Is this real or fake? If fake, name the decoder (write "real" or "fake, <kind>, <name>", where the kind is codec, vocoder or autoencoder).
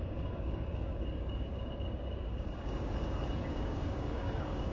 fake, codec, DAC